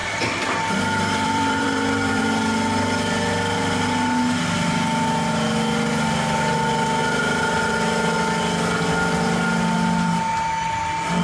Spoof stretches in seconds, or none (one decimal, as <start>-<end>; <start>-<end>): 0.0-2.2